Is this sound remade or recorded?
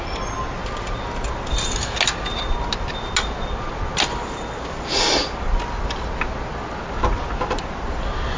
recorded